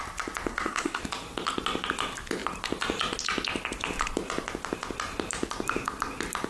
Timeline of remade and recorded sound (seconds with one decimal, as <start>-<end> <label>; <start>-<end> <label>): 0.0-0.5 recorded; 0.5-1.0 remade; 1.0-6.5 recorded